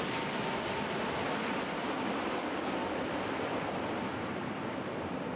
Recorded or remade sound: recorded